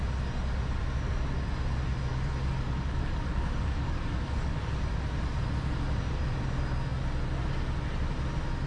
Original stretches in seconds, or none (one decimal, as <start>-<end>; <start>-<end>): 0.0-2.1; 4.7-8.7